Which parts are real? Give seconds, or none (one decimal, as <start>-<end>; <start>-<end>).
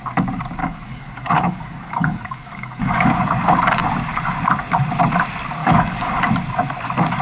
0.0-0.6; 3.4-5.6; 6.1-7.2